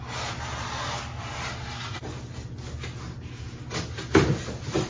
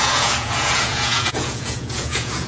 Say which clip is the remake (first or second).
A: second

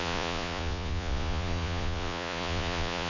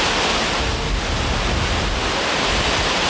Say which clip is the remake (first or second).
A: first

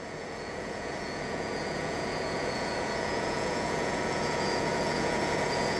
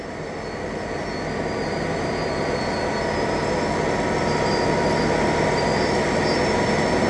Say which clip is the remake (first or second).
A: first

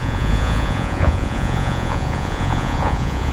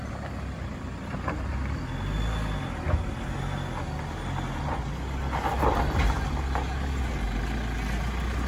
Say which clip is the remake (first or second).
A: first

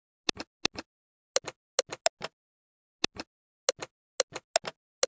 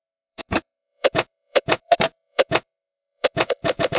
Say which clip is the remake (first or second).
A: second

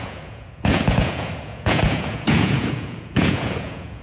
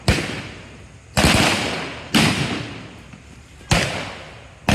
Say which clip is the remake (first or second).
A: first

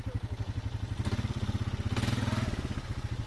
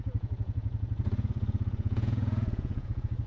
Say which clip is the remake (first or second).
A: second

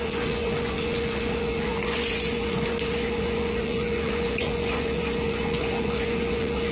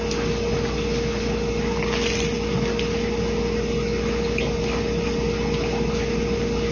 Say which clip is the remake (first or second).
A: first